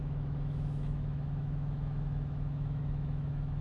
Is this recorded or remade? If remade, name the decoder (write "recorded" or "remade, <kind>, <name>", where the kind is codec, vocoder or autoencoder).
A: remade, autoencoder, DAC-VAE